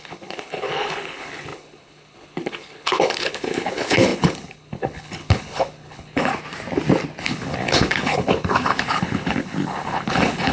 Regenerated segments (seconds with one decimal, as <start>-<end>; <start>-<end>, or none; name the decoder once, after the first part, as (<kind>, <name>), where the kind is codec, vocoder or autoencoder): 0.0-6.3 (codec, HILCodec); 7.2-10.5